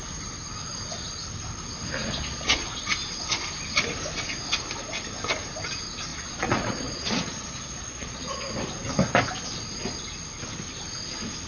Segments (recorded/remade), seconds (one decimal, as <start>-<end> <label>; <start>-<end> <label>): 0.0-2.0 recorded; 2.0-2.8 remade; 2.8-6.1 recorded; 6.1-8.5 remade; 8.5-11.5 recorded